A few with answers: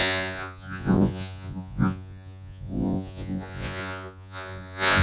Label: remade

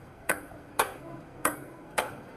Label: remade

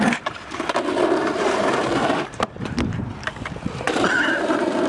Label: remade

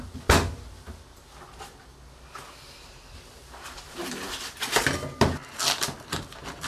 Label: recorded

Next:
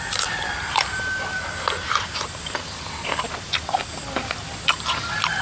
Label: remade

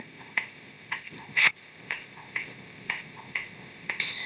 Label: remade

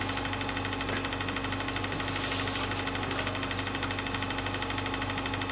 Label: recorded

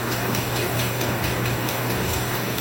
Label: remade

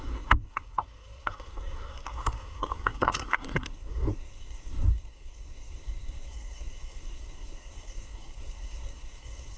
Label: remade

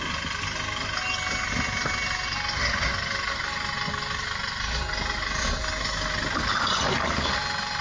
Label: recorded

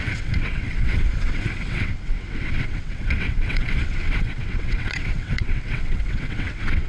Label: remade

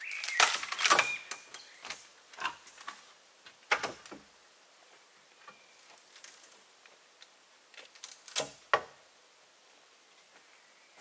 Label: recorded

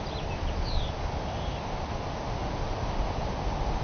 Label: recorded